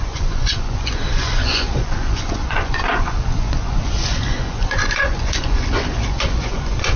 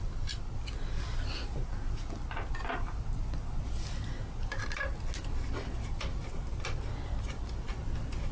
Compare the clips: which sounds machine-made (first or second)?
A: first